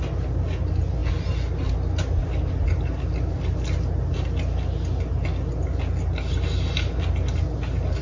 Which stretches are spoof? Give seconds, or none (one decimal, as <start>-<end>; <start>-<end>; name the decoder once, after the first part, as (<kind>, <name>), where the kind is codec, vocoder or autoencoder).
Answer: none